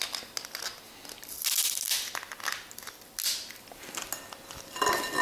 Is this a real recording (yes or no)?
yes